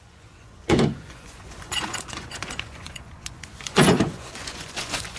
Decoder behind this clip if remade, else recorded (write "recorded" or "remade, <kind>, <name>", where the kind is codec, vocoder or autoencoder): remade, vocoder, Vocos